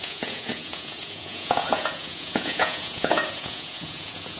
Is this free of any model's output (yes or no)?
no